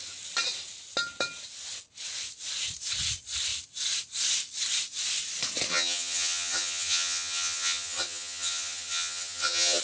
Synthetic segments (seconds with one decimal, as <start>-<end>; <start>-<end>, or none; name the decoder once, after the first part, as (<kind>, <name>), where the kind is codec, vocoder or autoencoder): 5.7-9.8 (vocoder, HiFi-GAN)